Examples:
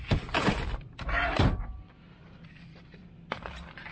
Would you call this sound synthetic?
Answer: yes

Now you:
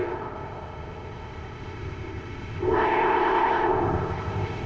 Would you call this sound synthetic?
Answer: yes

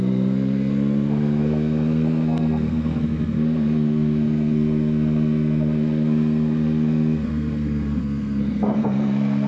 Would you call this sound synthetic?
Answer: yes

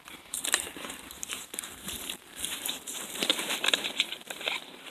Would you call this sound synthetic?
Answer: yes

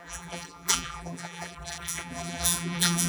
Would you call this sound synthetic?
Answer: yes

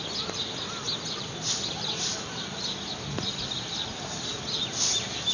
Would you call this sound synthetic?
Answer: no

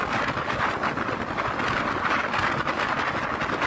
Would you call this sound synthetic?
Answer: no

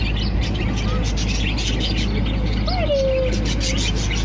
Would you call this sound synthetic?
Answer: no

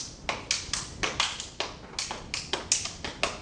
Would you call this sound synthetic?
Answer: no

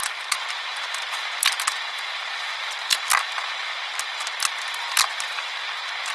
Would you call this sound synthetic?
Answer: no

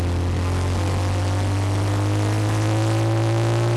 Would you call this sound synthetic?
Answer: no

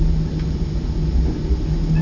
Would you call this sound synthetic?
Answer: no